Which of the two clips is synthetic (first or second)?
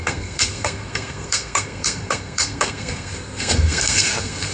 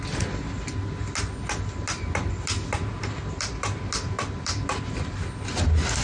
first